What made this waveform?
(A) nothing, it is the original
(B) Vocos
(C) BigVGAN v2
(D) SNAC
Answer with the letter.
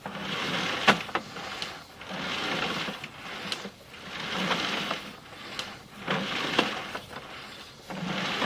A